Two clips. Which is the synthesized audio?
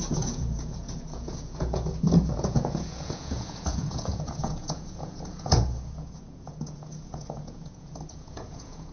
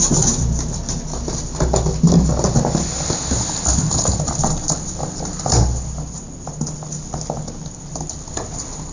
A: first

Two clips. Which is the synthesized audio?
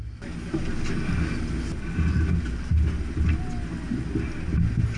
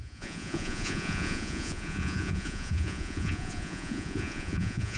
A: second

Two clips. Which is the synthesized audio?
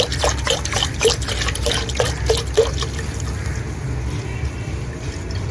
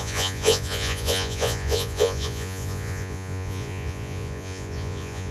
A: second